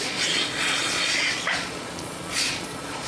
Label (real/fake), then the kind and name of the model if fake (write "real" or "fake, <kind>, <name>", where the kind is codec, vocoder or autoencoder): fake, vocoder, Vocos